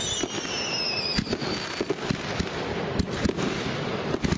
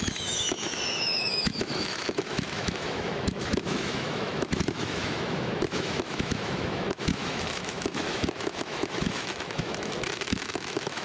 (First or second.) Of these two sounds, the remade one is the second